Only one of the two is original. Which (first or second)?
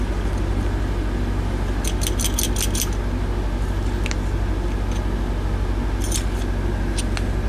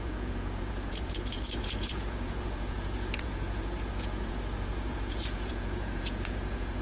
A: first